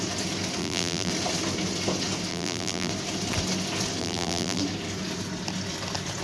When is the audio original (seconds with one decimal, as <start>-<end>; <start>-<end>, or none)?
0.0-0.6; 1.1-2.3; 2.9-4.0; 4.6-6.2